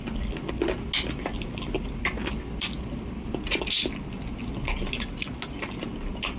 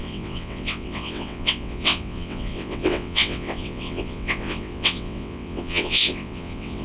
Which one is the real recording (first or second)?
first